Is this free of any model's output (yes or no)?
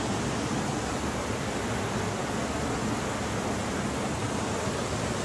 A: yes